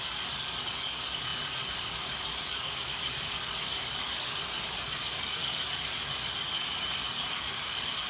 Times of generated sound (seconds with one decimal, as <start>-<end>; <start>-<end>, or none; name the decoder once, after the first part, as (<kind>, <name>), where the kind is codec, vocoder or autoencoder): 0.0-8.1 (codec, DAC)